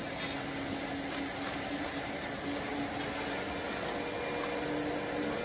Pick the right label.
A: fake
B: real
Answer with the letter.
B